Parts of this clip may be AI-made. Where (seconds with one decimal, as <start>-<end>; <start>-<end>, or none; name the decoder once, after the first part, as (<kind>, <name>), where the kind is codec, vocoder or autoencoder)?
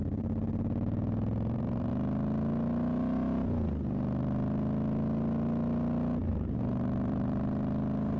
0.0-1.9 (vocoder, BigVGAN v2); 6.3-7.4